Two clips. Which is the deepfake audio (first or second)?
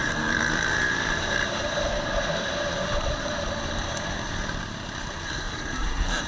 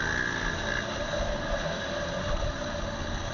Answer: first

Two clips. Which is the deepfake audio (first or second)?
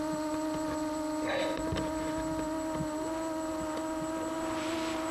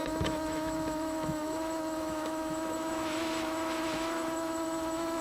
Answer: second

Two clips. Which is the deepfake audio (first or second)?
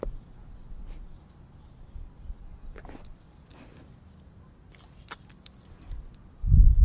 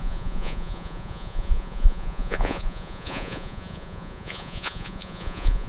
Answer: second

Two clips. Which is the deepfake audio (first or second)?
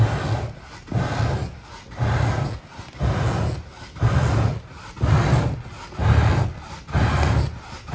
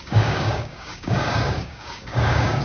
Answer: second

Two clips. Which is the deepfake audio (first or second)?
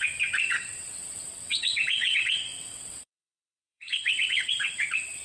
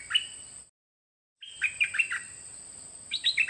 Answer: first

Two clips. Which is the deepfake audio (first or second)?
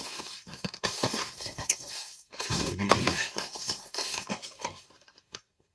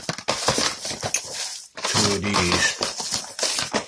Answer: first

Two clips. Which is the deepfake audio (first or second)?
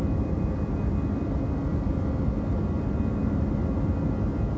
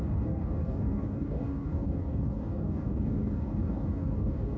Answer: second